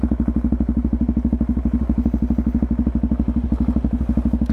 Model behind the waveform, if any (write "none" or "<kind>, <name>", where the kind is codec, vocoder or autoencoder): none